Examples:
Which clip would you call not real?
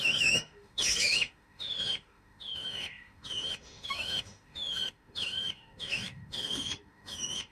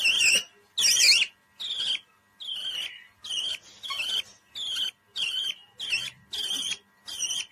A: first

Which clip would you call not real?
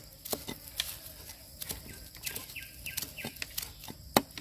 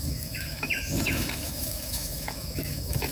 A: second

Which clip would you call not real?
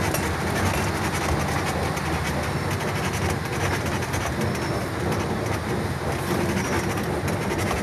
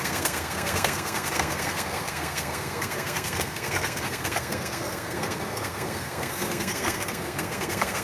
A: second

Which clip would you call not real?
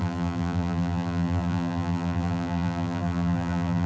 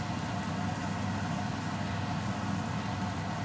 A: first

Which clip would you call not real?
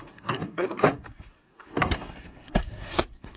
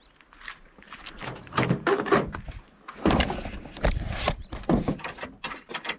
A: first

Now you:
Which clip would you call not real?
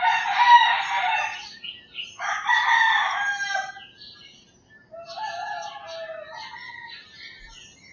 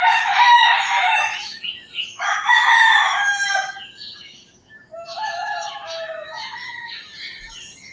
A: second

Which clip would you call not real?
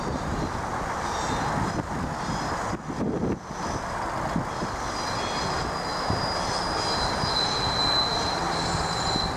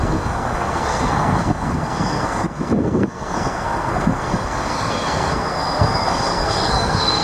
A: second